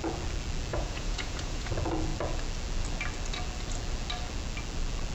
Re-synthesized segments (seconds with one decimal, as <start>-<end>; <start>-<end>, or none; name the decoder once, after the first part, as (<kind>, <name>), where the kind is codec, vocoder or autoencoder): 0.7-1.7 (vocoder, Vocos)

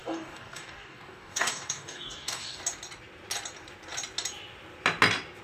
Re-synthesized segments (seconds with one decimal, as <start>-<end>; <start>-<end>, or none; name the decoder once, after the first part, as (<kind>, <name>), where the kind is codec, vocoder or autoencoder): 0.0-2.6 (codec, DAC)

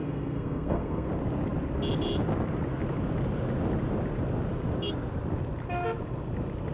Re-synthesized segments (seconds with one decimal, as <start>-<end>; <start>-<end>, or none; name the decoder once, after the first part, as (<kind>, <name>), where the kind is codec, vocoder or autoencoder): 0.0-1.1 (codec, SNAC)

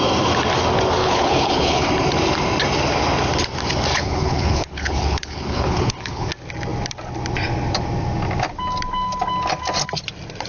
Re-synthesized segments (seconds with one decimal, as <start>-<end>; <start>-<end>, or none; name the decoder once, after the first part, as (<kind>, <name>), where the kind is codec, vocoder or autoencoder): 1.0-1.9 (codec, HILCodec); 3.9-6.3